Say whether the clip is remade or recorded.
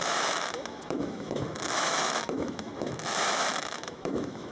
remade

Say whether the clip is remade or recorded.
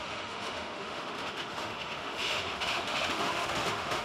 remade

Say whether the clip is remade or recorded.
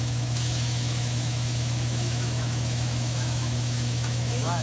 remade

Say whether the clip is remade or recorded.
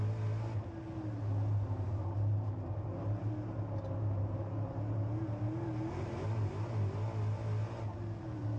recorded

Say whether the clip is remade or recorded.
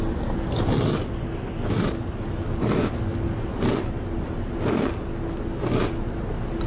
recorded